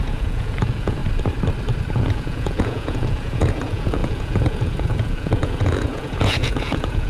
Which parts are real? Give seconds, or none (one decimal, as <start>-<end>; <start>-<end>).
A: 1.0-1.9